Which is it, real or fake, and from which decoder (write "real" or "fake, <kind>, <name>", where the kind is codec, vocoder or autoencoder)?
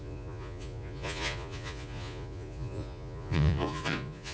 fake, vocoder, Vocos